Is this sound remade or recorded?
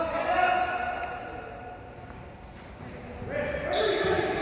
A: recorded